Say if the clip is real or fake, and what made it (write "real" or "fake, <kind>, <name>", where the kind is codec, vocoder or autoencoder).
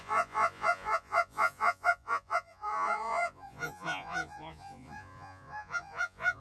fake, vocoder, Vocos